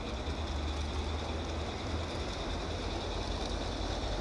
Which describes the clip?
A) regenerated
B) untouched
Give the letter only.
B